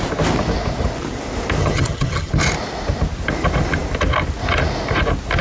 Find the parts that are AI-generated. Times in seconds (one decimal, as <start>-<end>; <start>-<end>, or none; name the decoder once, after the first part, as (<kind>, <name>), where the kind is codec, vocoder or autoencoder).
1.6-2.3 (vocoder, HiFi-GAN)